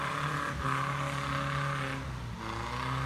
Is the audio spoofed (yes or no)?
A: no